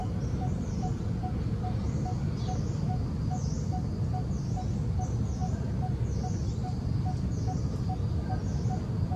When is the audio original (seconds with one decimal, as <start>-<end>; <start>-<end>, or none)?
0.0-9.2